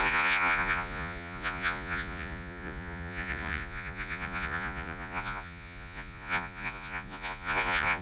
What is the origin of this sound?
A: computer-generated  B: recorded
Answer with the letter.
A